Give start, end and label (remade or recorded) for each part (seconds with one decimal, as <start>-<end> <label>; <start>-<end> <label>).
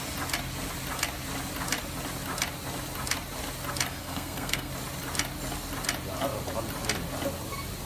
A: 0.0-4.0 recorded; 4.0-4.7 remade; 4.7-7.9 recorded